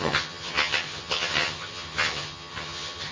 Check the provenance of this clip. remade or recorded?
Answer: remade